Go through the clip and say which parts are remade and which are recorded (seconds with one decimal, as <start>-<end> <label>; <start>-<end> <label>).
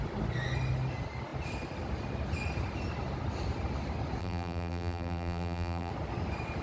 0.0-4.2 recorded; 4.2-5.9 remade; 5.9-6.6 recorded